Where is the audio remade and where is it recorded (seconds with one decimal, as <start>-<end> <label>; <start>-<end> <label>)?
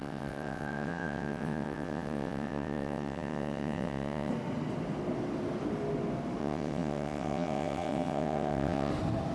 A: 0.0-4.3 remade; 4.3-6.4 recorded; 6.4-8.9 remade; 8.9-9.3 recorded